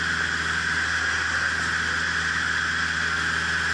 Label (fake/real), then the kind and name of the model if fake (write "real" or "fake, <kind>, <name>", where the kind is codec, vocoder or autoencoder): real